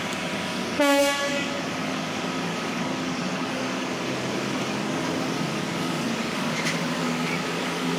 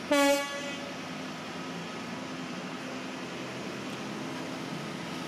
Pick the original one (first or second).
second